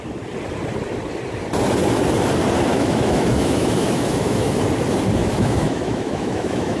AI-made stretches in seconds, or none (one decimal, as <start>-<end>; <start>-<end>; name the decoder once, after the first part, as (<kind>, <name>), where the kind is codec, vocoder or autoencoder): 2.7-4.6 (autoencoder, DAC-VAE); 5.2-6.8